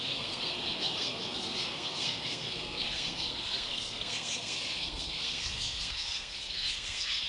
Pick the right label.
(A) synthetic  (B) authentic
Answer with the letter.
A